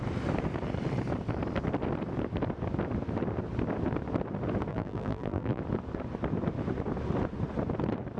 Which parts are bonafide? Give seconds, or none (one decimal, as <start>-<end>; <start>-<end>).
0.0-4.7; 5.6-8.2